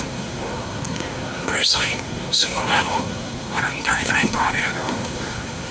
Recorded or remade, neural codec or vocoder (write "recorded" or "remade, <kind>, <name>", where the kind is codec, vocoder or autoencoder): remade, codec, SNAC